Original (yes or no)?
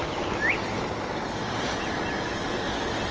yes